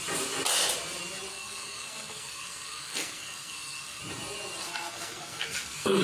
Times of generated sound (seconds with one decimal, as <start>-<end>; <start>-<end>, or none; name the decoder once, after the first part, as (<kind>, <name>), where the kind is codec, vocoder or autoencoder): 1.3-4.0 (codec, SNAC); 4.6-6.0